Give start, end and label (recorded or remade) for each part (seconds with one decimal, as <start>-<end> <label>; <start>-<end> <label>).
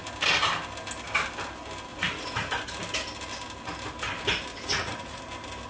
0.0-1.9 recorded; 1.9-2.5 remade; 2.5-4.5 recorded; 4.5-5.2 remade; 5.2-5.7 recorded